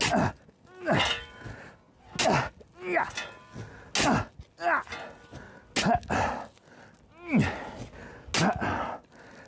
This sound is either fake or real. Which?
real